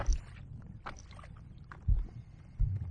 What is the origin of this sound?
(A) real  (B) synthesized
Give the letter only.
A